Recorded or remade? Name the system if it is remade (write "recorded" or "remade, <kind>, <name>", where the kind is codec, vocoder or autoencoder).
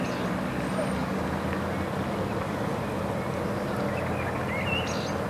recorded